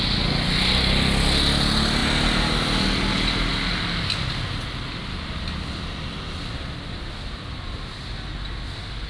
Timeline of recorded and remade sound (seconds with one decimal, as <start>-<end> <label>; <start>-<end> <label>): 0.0-9.1 recorded